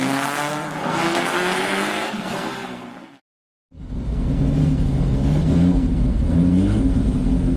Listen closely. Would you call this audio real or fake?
fake